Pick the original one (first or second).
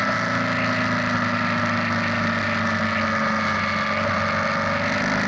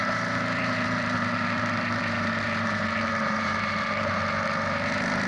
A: first